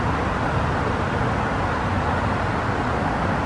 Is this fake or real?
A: real